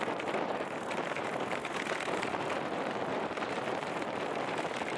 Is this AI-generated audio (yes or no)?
yes